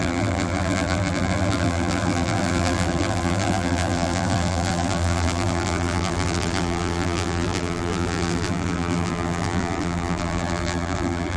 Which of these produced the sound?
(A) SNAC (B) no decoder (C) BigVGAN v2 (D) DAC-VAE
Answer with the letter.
C